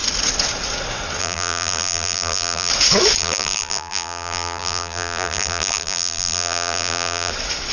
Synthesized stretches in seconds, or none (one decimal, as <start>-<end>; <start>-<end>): 1.2-2.7; 3.2-7.3